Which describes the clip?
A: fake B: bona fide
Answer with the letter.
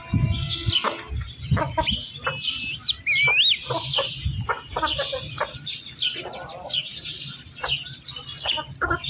B